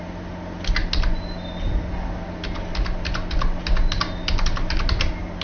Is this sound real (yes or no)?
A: yes